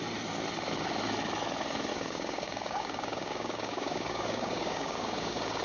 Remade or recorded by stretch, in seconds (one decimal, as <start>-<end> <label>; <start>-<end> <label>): 0.0-1.9 recorded; 1.9-5.6 remade